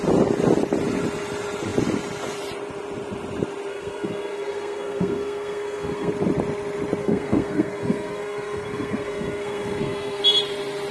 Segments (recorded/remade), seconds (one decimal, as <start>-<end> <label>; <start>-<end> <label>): 0.0-3.7 recorded; 3.7-6.1 remade; 6.1-7.0 recorded; 7.0-10.2 remade; 10.2-10.9 recorded